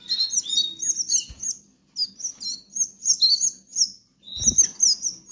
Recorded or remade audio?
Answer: recorded